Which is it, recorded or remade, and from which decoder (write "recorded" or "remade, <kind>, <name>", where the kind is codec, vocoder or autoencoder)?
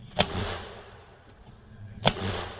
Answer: remade, vocoder, Vocos